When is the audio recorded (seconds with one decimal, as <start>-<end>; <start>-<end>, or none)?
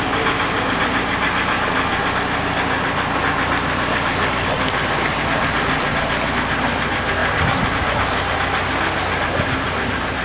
0.0-7.2; 7.7-10.2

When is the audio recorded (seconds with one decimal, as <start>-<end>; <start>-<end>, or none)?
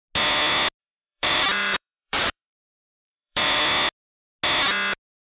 0.0-0.8; 3.6-5.3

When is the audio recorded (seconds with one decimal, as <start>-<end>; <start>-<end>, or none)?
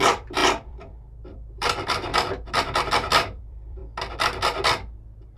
2.1-2.9; 3.8-5.4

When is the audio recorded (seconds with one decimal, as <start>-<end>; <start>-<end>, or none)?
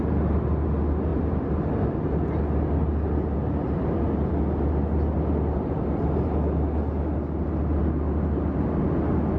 0.0-1.1; 1.6-9.4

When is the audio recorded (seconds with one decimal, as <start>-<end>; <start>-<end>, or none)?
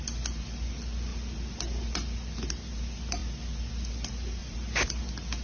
0.0-4.4; 5.0-5.4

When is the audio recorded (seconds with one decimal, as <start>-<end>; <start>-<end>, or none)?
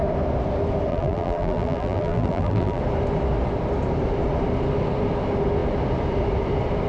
0.0-0.9; 2.8-6.9